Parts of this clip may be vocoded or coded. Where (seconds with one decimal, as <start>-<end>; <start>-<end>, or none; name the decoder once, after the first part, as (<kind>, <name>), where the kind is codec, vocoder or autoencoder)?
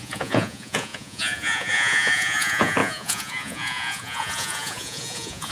0.0-5.5 (vocoder, Vocos)